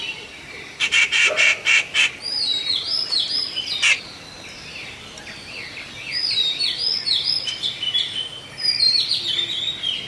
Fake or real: fake